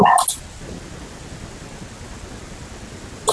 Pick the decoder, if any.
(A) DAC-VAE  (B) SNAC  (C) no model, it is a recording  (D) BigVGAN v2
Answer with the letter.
C